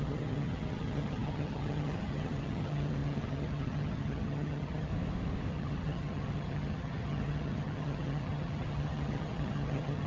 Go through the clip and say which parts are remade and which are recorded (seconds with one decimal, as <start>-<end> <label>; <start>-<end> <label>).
0.0-4.9 remade; 4.9-5.5 recorded; 5.5-10.1 remade